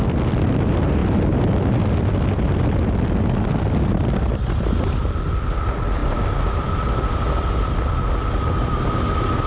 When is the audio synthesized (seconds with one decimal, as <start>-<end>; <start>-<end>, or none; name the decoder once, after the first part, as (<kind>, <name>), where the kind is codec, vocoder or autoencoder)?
6.0-6.7 (vocoder, BigVGAN v2)